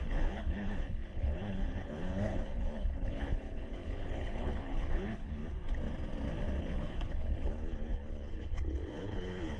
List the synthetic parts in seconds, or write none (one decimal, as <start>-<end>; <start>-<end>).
0.0-5.4; 6.6-9.6